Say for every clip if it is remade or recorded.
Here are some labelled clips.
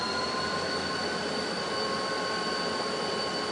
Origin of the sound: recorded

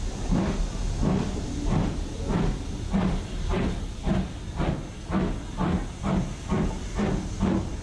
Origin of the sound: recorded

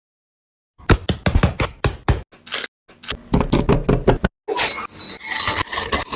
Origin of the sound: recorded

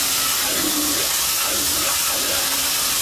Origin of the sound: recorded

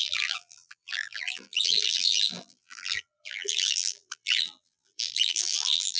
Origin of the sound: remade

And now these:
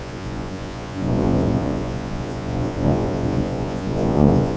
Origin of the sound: remade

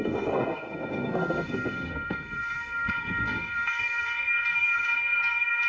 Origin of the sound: remade